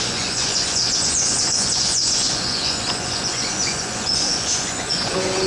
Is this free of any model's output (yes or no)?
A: no